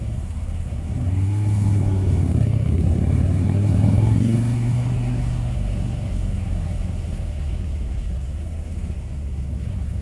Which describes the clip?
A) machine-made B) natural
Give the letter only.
A